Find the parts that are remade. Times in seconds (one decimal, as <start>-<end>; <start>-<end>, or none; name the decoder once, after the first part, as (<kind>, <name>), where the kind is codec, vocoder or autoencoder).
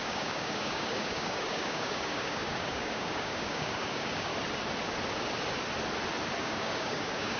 0.0-4.3 (codec, DAC); 6.4-7.4